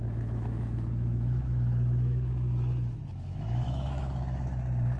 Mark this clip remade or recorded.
remade